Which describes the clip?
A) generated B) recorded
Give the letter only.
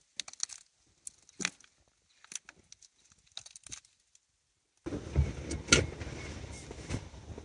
B